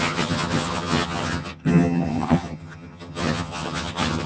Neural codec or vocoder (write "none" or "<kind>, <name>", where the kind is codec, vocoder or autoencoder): vocoder, HiFi-GAN